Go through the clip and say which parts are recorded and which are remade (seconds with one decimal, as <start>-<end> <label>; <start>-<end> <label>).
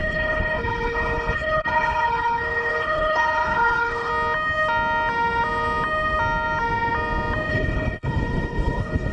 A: 0.0-4.1 remade; 4.1-7.5 recorded; 7.5-9.1 remade